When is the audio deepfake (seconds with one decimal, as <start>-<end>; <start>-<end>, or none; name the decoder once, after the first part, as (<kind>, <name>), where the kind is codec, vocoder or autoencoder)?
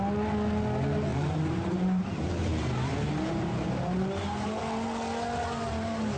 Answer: 1.1-2.5 (vocoder, BigVGAN v2); 2.9-4.6